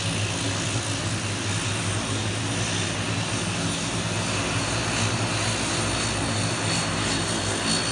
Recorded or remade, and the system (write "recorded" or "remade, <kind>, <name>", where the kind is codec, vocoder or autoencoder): recorded